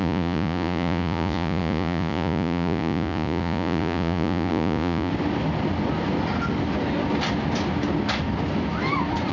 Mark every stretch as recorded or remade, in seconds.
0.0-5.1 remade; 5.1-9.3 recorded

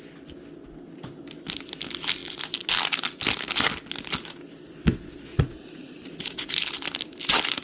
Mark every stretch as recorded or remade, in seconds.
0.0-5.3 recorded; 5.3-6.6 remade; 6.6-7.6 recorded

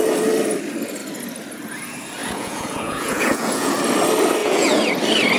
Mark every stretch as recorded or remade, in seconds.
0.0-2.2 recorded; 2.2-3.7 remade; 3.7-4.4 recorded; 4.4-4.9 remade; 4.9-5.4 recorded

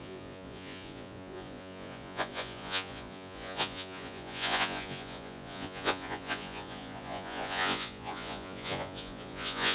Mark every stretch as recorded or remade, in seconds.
0.0-9.7 remade

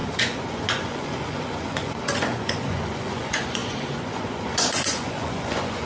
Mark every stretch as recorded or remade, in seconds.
0.0-5.9 remade

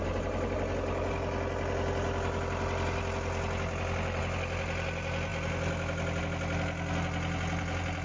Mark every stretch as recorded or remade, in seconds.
0.0-8.0 recorded

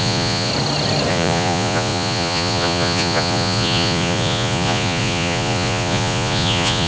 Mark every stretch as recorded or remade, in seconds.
0.0-0.5 remade; 0.5-1.1 recorded; 1.1-6.9 remade

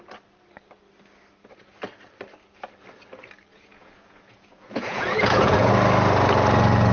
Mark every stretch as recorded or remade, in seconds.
0.0-3.5 recorded; 3.5-5.7 remade; 5.7-6.9 recorded